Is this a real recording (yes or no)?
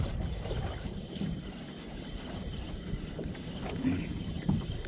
yes